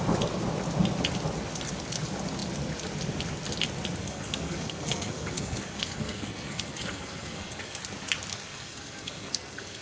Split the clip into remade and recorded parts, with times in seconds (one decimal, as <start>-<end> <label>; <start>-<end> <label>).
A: 0.0-4.0 recorded; 4.0-7.8 remade; 7.8-8.3 recorded; 8.3-9.8 remade